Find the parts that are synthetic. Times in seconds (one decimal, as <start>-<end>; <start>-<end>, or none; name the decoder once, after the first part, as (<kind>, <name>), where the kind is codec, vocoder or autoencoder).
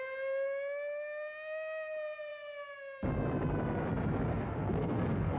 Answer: 4.3-5.4 (codec, SNAC)